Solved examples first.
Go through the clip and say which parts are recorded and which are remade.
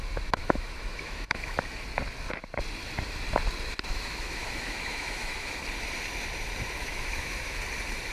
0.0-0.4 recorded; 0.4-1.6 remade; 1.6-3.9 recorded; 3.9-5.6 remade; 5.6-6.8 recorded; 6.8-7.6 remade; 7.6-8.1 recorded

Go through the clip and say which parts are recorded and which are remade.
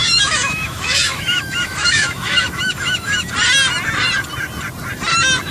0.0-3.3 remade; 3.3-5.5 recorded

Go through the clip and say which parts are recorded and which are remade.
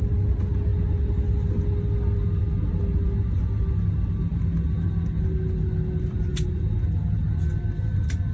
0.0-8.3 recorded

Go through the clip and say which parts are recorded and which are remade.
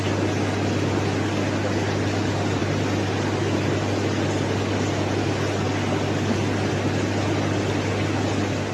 0.0-8.7 recorded